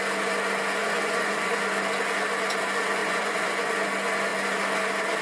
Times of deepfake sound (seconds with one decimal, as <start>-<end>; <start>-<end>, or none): 0.8-1.6; 3.0-3.7